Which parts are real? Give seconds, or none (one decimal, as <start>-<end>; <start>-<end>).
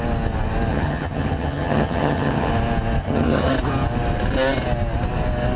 0.0-0.7; 2.5-3.0; 3.5-5.6